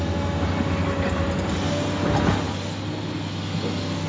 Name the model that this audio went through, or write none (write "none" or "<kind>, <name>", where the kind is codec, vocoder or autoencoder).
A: none